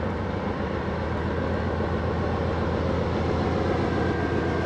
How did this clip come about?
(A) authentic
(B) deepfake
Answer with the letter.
A